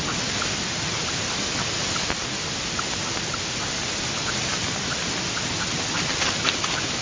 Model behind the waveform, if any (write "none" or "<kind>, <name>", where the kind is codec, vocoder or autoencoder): none